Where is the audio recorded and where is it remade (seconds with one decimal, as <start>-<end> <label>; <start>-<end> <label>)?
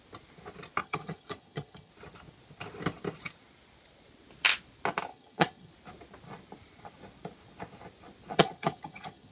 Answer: 0.0-0.8 recorded; 0.8-1.9 remade; 1.9-5.1 recorded; 5.1-5.7 remade; 5.7-8.3 recorded; 8.3-9.3 remade